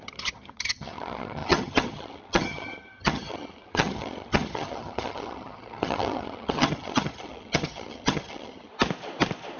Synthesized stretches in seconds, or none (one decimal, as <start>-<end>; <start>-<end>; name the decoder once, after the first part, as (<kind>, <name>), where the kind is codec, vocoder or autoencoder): 0.0-8.7 (vocoder, HiFi-GAN)